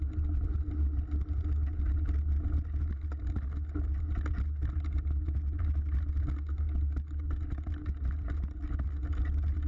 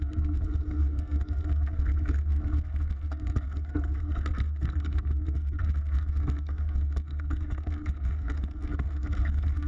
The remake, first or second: second